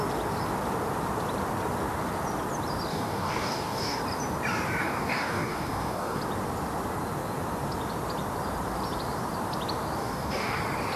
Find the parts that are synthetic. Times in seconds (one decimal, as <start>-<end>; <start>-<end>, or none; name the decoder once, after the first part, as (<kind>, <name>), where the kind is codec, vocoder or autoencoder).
2.9-4.0 (codec, DAC); 4.8-6.2; 10.0-10.6